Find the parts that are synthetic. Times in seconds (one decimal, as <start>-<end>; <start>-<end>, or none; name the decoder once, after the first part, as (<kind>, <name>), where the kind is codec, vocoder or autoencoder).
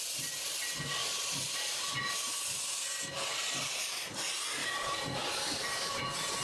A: 1.0-1.8 (vocoder, BigVGAN v2); 4.6-6.0